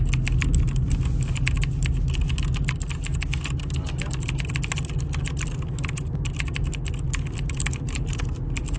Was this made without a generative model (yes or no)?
yes